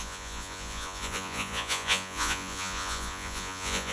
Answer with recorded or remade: remade